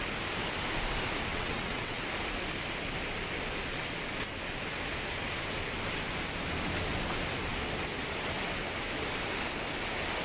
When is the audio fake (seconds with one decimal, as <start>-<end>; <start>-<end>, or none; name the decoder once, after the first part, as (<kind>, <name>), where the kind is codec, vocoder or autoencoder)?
1.3-2.0 (vocoder, WaveNeXt)